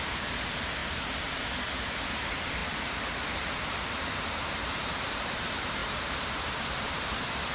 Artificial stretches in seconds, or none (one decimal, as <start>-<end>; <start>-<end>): 0.0-7.5